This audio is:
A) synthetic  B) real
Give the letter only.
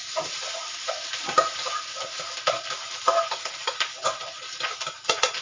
B